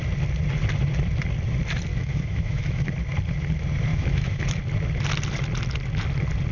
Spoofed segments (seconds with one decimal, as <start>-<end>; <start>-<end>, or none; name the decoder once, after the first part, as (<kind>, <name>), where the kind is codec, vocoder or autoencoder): 1.9-2.9 (autoencoder, DAC-VAE); 3.9-4.6